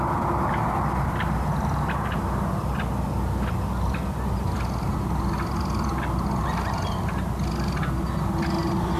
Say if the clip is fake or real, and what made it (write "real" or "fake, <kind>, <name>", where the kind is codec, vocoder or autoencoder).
real